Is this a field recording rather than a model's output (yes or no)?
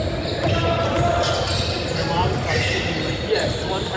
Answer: yes